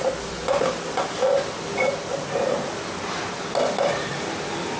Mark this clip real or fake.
real